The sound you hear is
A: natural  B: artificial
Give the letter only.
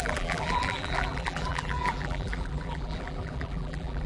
B